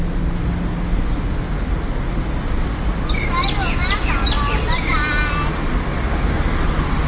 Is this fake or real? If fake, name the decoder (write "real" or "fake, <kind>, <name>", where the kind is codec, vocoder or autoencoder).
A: real